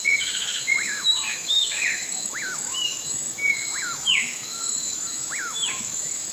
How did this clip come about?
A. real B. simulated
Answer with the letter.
B